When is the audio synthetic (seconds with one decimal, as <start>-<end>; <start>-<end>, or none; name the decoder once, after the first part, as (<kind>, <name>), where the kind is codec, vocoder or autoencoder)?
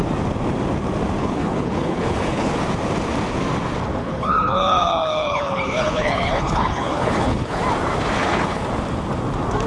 1.2-2.5 (codec, HILCodec); 4.0-7.6; 8.2-8.7